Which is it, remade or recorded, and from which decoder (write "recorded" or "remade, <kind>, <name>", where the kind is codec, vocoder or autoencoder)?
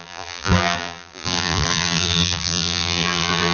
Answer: remade, vocoder, BigVGAN v2